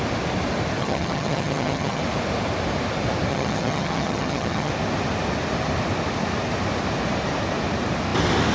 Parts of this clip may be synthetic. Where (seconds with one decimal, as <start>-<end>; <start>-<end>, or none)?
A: 0.8-2.0; 3.3-4.7